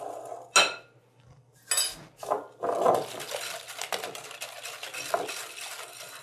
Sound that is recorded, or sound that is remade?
recorded